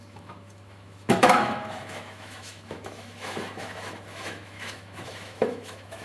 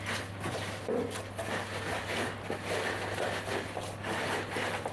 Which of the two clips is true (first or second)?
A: second